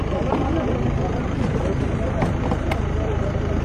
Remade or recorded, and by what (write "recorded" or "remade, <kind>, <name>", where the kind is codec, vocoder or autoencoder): remade, vocoder, BigVGAN v2